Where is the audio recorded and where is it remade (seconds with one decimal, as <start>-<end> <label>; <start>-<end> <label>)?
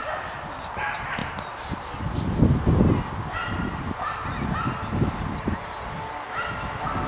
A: 0.0-7.1 recorded